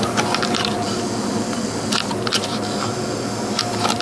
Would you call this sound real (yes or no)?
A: yes